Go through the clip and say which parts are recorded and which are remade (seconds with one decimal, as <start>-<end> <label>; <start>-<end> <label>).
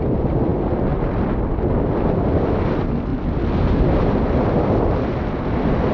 0.0-5.9 recorded